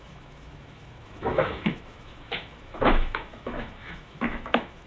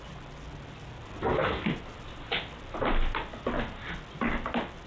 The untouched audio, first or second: second